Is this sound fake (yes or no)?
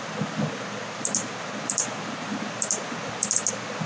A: no